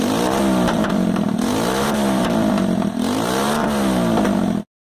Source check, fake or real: real